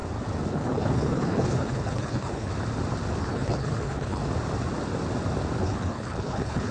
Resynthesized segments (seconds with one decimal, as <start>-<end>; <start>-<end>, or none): 0.5-2.5; 3.2-4.2; 5.6-6.7